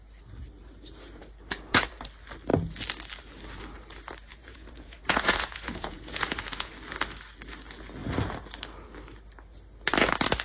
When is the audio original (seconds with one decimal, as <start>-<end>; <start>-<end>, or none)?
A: 0.0-4.3; 6.7-10.4